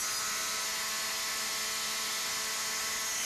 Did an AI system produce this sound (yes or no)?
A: no